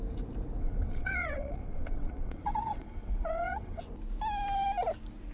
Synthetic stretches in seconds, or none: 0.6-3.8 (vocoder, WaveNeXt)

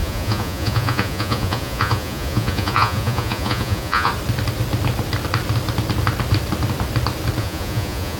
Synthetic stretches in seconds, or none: 0.0-4.1 (vocoder, Vocos); 7.4-8.2

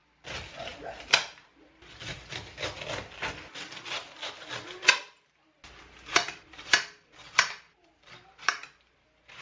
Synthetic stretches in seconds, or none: none